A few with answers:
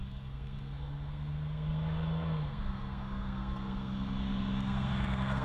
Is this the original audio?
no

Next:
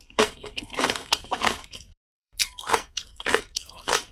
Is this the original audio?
no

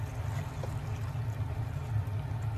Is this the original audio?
yes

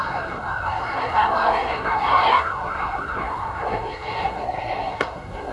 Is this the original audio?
no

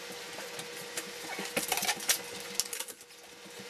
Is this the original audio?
yes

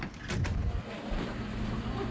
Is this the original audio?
yes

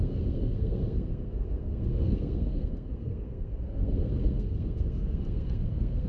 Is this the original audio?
no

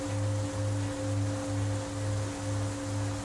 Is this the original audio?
yes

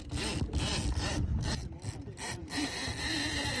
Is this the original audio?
yes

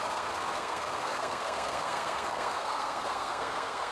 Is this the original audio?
no